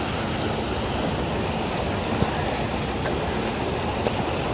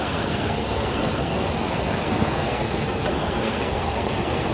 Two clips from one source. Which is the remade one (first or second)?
second